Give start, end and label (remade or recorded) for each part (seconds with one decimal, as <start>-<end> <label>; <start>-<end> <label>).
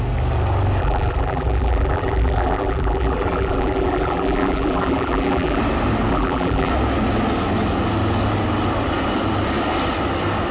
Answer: 0.0-0.8 recorded; 0.8-5.6 remade; 5.6-6.1 recorded; 6.1-6.7 remade; 6.7-10.5 recorded